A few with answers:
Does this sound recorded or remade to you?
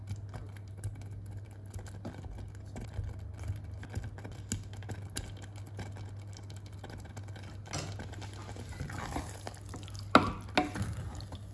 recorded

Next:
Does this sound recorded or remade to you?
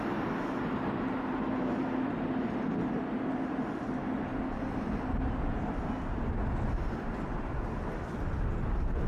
recorded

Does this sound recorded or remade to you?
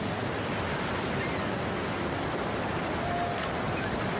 recorded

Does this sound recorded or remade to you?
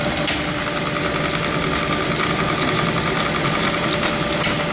recorded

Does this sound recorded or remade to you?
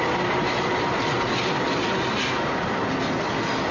recorded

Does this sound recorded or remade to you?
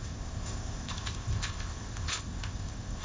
remade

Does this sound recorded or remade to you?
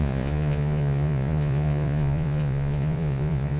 remade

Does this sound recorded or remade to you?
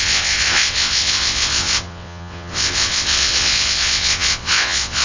remade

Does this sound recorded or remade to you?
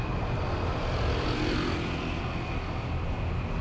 recorded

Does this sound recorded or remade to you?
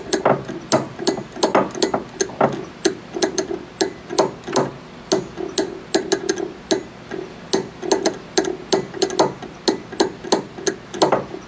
recorded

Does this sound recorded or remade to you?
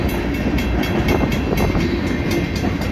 recorded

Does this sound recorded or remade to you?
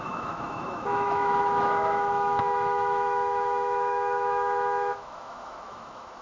remade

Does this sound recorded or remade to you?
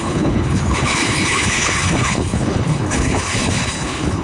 remade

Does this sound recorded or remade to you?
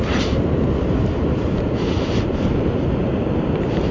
remade